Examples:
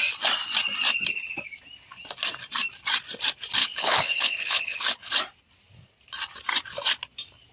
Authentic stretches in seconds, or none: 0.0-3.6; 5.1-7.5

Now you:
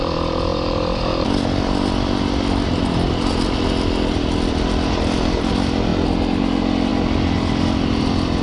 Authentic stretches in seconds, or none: 0.0-8.4

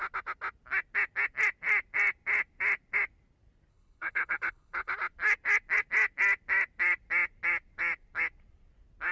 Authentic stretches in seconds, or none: 0.0-3.7; 4.9-9.1

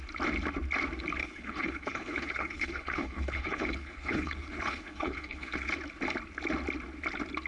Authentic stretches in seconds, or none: 0.0-1.2; 5.7-7.5

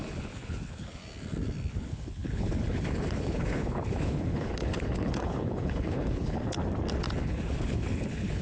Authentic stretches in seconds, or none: 1.0-1.7; 6.6-7.2

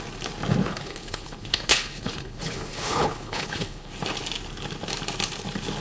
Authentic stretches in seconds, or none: 0.0-0.6; 3.9-5.8